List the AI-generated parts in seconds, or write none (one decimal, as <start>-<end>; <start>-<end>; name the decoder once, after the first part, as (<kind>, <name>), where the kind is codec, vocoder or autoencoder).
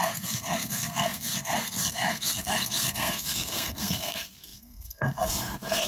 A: 0.0-5.9 (codec, SNAC)